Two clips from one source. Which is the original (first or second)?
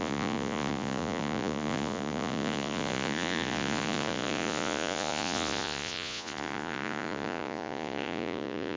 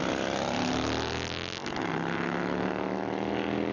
second